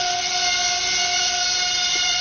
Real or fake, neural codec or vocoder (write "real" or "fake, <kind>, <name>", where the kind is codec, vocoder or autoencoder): real